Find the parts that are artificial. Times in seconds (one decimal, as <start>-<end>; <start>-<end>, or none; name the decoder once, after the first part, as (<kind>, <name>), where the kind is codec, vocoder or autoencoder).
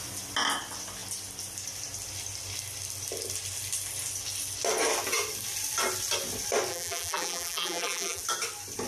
6.7-8.2 (vocoder, BigVGAN v2)